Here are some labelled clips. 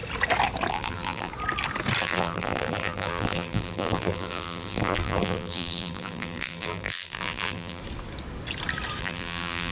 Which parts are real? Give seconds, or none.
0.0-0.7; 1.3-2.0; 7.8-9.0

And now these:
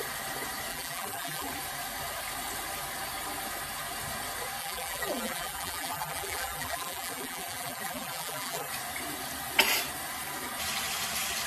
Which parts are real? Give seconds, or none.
0.0-0.7; 1.5-4.6; 8.7-11.5

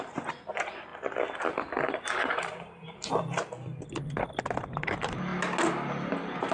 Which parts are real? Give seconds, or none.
5.3-6.1

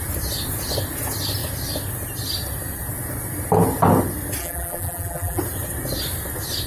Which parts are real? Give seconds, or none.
0.0-4.4; 5.4-6.7

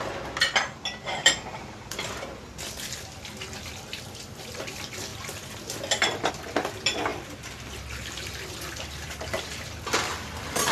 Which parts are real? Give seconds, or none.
0.0-1.2; 2.1-10.7

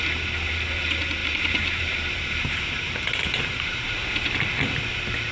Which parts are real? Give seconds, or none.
0.0-1.2; 4.4-5.3

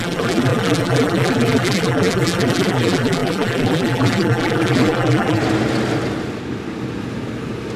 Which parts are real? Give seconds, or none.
5.4-7.8